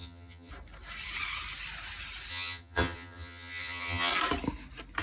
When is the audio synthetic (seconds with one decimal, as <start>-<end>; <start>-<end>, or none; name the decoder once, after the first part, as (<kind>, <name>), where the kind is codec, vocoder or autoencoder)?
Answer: 0.0-0.5 (vocoder, HiFi-GAN); 2.3-4.1